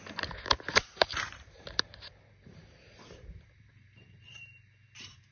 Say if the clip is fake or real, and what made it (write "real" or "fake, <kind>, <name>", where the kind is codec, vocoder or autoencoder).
fake, vocoder, BigVGAN v2